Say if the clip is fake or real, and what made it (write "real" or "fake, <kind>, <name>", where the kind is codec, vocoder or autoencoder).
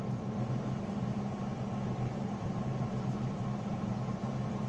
fake, vocoder, BigVGAN v2